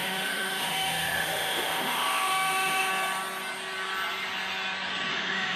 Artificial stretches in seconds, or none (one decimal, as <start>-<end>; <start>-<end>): 0.0-2.9; 5.1-5.6